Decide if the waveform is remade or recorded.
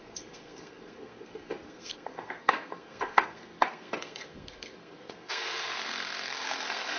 remade